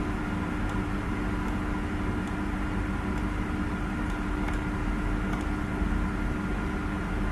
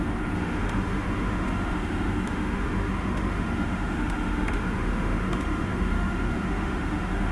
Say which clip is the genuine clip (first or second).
first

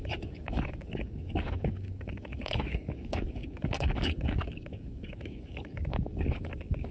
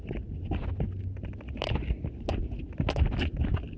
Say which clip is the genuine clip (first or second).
second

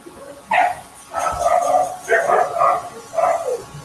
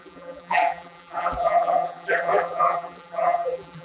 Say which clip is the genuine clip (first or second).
first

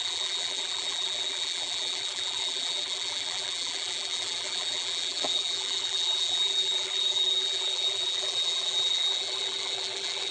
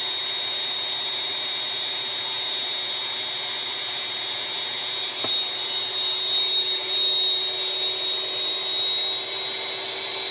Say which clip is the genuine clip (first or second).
second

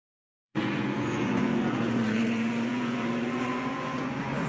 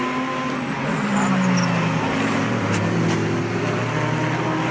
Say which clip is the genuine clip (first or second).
second